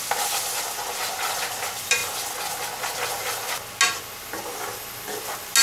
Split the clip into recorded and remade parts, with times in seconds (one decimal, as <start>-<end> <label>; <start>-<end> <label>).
0.0-5.6 recorded